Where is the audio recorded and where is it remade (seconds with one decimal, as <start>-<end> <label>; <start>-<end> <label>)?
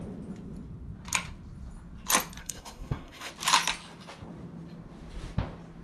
0.0-2.4 recorded; 2.4-3.3 remade; 3.3-5.8 recorded